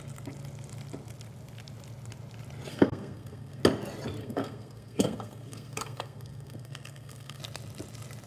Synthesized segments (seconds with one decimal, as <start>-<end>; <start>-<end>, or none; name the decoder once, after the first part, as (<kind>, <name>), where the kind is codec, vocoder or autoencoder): 2.7-3.6 (codec, SNAC); 4.2-7.4